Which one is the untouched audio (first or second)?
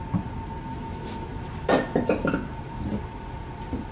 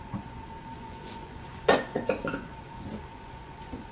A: first